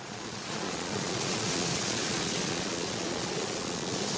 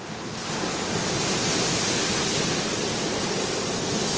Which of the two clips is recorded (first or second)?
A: second